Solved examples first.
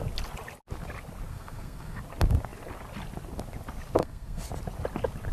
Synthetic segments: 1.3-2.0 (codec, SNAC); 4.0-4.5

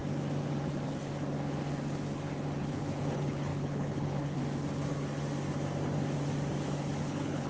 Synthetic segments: 2.6-4.4 (codec, HILCodec); 7.0-7.5

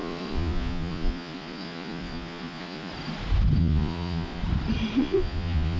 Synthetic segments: 0.0-2.9 (vocoder, Vocos); 3.6-4.4; 5.0-5.8

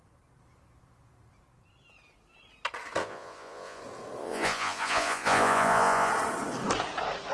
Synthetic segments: 3.0-3.8 (vocoder, Vocos); 4.2-6.1

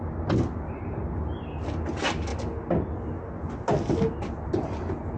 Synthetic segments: none

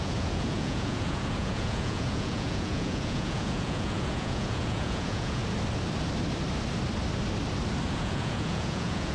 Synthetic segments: 0.0-5.4 (vocoder, Vocos); 7.9-9.1